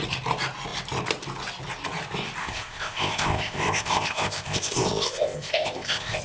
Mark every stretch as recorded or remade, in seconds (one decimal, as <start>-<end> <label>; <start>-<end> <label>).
0.0-2.4 recorded; 2.4-6.2 remade